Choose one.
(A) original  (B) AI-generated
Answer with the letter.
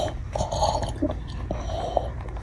A